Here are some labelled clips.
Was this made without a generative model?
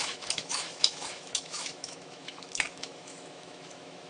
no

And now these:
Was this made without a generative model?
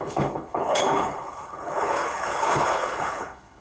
no